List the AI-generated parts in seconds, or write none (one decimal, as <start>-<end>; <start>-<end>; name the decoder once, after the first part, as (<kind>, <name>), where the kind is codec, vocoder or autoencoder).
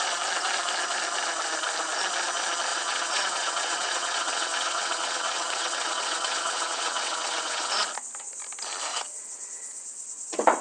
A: 2.7-7.7 (vocoder, WaveNeXt); 8.9-10.6